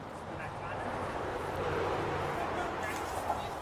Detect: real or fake real